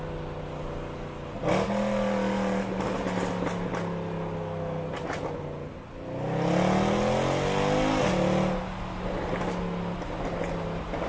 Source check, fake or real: real